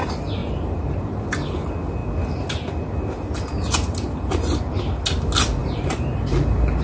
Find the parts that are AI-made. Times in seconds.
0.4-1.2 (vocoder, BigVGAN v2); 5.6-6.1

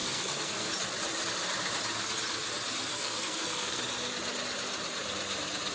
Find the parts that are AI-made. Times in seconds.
0.0-0.7 (codec, SNAC); 2.9-3.8

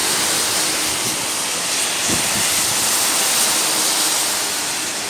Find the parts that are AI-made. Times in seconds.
2.0-2.6 (vocoder, BigVGAN v2)

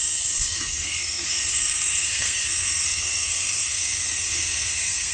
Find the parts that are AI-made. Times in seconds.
0.0-5.1 (codec, SNAC)

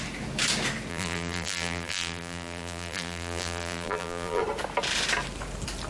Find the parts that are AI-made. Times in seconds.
0.9-4.4 (vocoder, BigVGAN v2)

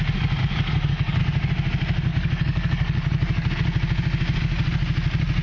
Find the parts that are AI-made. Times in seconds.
0.4-1.2 (codec, DAC); 2.1-3.5

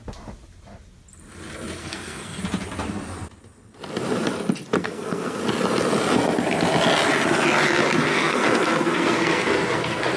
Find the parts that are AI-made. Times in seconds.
1.8-2.4 (codec, SNAC); 4.8-5.4; 8.1-10.2